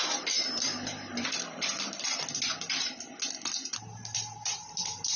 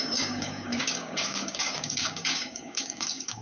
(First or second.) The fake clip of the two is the second